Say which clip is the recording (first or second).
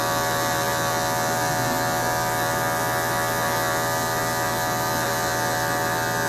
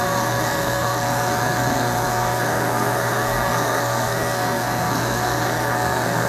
first